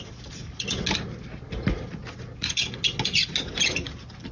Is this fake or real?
real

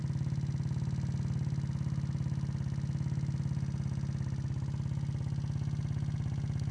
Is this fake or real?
real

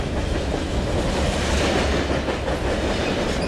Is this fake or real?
real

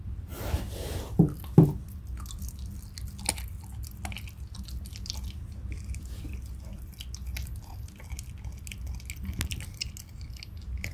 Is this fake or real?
real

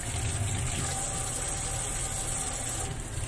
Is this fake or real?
real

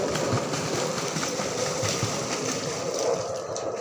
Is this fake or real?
real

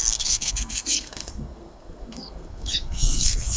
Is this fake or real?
fake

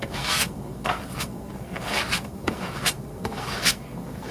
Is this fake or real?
fake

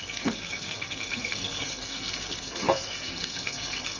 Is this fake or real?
fake